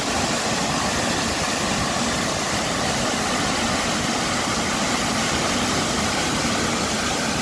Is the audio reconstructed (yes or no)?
no